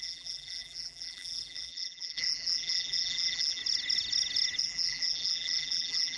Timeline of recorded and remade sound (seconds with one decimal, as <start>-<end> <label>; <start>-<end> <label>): 0.0-3.6 remade; 3.6-4.6 recorded; 4.6-6.2 remade